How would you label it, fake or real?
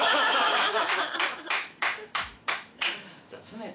fake